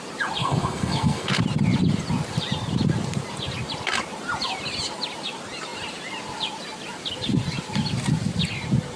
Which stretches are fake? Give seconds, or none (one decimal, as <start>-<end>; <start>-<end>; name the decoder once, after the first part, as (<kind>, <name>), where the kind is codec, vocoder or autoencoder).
0.4-1.4 (codec, SNAC)